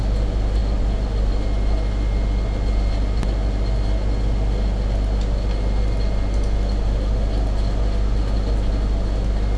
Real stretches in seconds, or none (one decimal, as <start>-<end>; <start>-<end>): 0.0-9.6